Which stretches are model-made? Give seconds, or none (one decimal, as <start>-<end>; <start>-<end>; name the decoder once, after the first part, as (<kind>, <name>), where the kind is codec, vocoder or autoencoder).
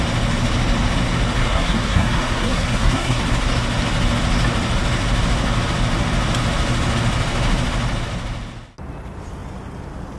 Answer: 1.4-3.2 (codec, SNAC)